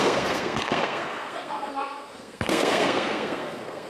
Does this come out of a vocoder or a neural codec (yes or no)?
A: yes